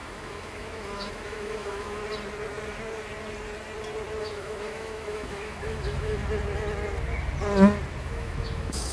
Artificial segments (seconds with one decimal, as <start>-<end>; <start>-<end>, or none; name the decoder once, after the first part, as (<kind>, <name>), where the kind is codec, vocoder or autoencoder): 0.0-2.0 (autoencoder, DAC-VAE); 4.2-6.2; 8.0-8.9